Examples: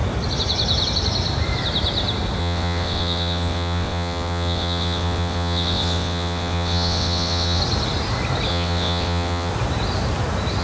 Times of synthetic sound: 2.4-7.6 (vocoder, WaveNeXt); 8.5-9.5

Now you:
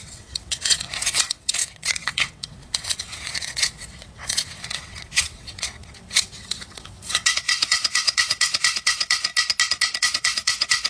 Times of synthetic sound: 0.0-9.3 (vocoder, WaveNeXt); 10.0-10.9